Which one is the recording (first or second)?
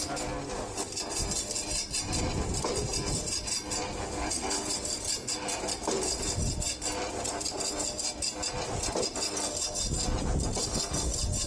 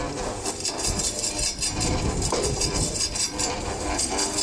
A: first